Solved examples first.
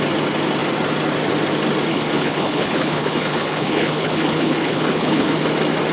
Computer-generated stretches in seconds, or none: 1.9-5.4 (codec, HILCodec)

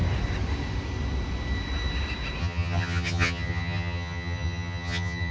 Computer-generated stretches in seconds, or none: 2.4-5.3 (vocoder, HiFi-GAN)